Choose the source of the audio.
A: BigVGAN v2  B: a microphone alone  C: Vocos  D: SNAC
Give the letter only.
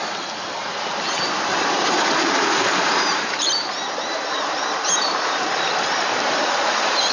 A